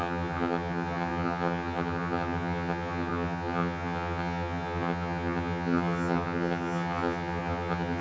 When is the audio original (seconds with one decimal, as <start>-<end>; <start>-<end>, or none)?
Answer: none

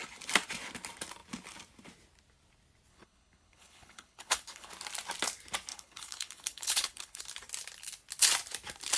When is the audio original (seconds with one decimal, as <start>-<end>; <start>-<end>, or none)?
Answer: 0.0-2.9; 4.7-5.7; 7.2-9.0

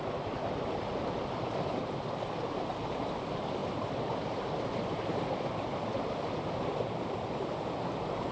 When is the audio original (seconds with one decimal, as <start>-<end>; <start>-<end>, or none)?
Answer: 0.0-3.6

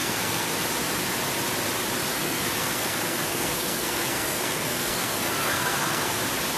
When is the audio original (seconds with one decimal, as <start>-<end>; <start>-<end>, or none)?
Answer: 0.6-2.1; 6.1-6.6

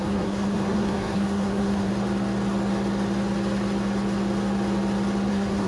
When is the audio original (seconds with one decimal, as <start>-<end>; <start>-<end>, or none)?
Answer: 1.9-5.3

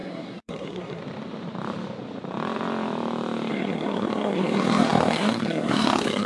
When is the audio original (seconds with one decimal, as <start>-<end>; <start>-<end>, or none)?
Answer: 1.0-3.5

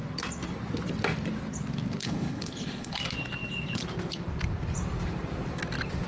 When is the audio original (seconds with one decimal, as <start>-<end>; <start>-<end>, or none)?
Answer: 0.0-2.0; 2.9-6.1

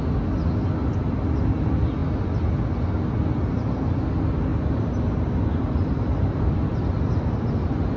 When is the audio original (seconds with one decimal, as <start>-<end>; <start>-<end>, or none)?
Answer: 0.0-8.0